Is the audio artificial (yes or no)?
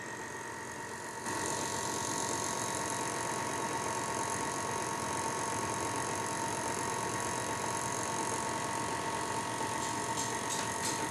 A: no